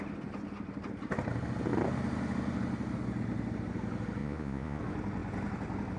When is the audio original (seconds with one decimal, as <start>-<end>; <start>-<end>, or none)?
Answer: 0.0-4.2; 4.8-6.0